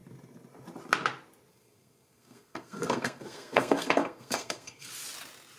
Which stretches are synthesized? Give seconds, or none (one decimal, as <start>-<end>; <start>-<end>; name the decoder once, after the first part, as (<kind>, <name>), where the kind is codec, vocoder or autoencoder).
1.5-4.9 (codec, SNAC)